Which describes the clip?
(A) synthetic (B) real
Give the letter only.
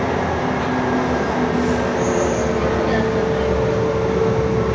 B